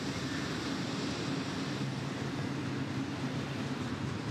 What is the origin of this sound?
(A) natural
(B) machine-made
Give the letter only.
A